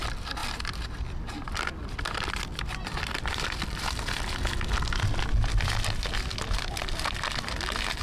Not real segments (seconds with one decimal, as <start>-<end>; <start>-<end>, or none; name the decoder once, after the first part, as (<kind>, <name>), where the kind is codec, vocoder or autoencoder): 0.4-5.2 (vocoder, BigVGAN v2)